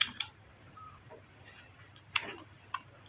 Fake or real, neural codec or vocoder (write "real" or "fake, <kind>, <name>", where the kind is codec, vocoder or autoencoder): fake, vocoder, BigVGAN v2